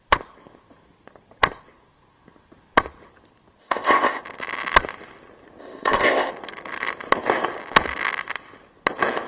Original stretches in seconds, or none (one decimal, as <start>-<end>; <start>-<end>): 0.0-3.6; 4.2-5.6; 6.3-9.3